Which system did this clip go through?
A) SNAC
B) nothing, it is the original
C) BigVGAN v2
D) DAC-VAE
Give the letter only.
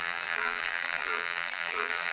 C